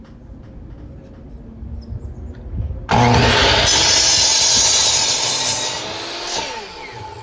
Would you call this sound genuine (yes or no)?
yes